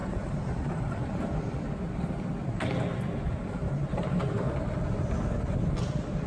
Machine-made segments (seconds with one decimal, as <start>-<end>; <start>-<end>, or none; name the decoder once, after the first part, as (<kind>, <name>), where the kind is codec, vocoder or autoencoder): 0.0-1.2 (vocoder, BigVGAN v2); 3.6-4.6

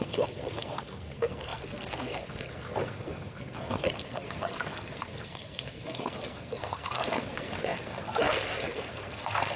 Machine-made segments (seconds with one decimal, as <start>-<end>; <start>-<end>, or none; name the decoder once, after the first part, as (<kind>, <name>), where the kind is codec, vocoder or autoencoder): 0.0-9.6 (codec, SNAC)

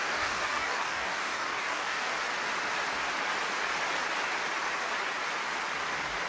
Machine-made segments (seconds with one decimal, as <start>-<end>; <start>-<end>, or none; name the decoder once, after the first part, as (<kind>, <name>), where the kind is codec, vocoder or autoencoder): 0.0-2.1 (codec, DAC)

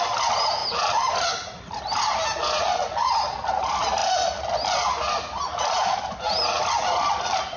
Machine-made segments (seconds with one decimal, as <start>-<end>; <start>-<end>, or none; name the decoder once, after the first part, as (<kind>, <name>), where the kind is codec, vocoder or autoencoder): 0.6-1.1 (vocoder, BigVGAN v2)

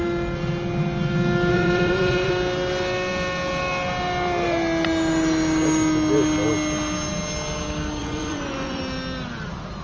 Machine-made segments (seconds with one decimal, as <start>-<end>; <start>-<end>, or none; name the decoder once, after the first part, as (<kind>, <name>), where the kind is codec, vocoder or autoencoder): 1.5-2.3 (vocoder, Vocos); 8.0-8.8

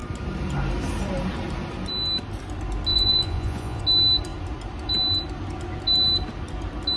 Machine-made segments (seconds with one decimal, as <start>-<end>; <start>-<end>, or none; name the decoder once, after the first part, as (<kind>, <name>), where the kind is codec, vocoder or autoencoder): 2.9-3.8 (vocoder, Vocos)

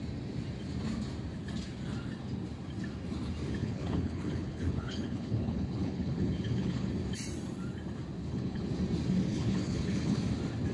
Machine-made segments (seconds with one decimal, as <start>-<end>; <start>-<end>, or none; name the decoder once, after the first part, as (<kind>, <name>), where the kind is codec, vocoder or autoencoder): 3.6-6.9 (codec, HILCodec); 8.2-8.7; 9.3-10.2